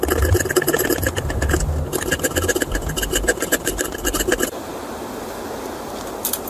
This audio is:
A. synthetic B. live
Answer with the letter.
B